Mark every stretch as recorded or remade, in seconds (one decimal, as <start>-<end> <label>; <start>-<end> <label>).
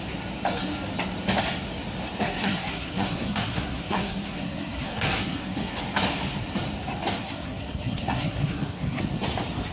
0.0-2.2 recorded; 2.2-5.7 remade; 5.7-7.2 recorded; 7.2-9.0 remade; 9.0-9.7 recorded